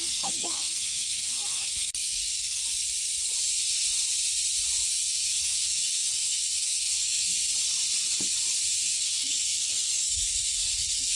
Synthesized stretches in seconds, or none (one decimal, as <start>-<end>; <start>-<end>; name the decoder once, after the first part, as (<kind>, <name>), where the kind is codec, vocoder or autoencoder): 0.0-2.6 (codec, SNAC); 4.9-7.3; 8.8-11.2